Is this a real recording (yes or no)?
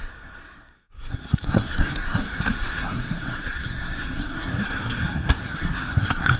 no